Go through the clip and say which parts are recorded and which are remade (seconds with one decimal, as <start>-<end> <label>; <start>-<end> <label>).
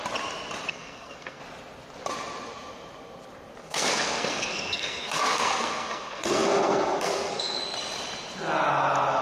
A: 0.0-0.7 recorded; 0.7-1.4 remade; 1.4-3.6 recorded; 3.6-7.6 remade; 7.6-9.2 recorded